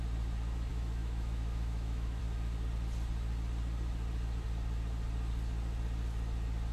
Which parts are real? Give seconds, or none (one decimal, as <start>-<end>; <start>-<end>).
0.0-0.7; 2.2-6.7